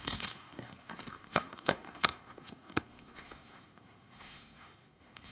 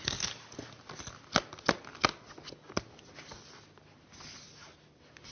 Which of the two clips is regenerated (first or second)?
first